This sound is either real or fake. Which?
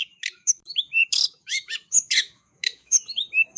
fake